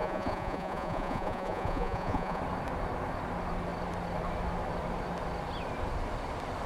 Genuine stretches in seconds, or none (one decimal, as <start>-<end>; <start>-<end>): 2.4-6.7